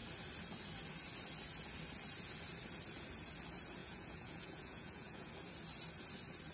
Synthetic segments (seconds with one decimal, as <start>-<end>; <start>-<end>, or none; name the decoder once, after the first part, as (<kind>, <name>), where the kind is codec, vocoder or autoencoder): 3.8-5.3 (vocoder, Vocos)